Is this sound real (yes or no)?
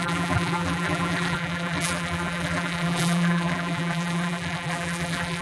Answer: no